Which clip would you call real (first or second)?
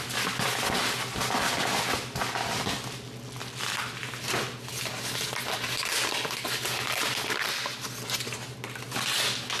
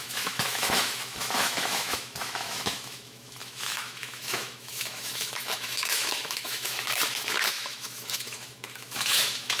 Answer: first